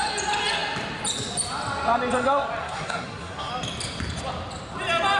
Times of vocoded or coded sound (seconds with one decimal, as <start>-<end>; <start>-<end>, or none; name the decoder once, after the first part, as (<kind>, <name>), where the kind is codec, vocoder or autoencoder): 2.6-3.5 (codec, SNAC)

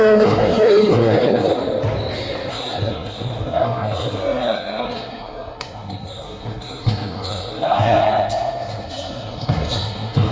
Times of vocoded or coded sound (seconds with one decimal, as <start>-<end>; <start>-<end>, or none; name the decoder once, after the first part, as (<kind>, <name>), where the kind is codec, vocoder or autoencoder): 0.0-1.6 (codec, SNAC); 2.5-10.3

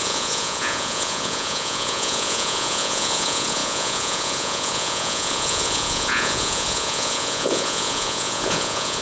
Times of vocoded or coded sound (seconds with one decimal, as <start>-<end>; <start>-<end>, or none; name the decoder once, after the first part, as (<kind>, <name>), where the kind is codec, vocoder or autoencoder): 0.0-9.0 (vocoder, Vocos)

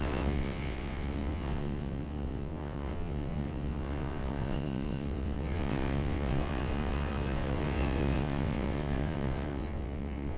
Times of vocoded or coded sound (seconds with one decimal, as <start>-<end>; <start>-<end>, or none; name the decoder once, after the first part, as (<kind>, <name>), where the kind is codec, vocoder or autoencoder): 0.0-10.4 (vocoder, WaveNeXt)

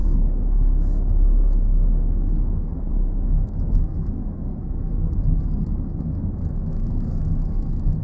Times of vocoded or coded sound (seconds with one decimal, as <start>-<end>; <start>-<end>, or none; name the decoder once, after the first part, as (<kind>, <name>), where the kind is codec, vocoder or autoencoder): 0.0-8.0 (codec, SNAC)

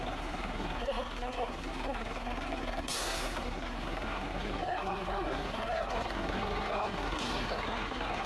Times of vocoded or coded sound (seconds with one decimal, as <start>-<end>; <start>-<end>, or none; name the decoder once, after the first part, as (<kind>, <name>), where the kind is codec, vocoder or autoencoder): 0.0-8.3 (codec, SNAC)

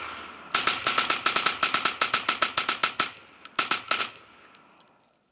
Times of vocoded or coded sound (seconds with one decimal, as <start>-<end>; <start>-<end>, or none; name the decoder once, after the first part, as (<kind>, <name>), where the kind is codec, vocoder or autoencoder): none

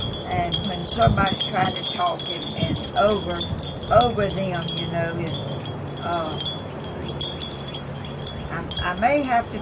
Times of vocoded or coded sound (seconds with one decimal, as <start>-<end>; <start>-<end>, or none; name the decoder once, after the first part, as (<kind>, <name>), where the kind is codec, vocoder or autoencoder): none